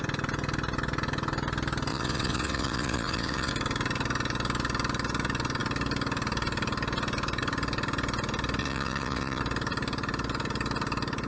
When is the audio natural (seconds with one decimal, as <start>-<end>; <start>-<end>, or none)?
0.0-1.9; 3.5-8.6; 9.4-11.3